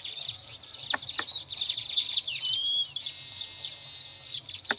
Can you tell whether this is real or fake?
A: real